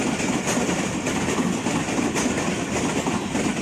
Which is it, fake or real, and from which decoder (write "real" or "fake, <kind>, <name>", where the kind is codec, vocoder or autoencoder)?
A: real